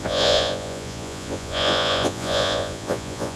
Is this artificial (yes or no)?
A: yes